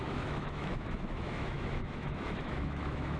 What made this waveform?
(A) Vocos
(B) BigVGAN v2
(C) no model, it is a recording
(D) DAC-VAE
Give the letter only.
D